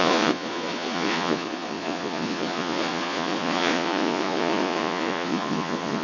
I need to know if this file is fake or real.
fake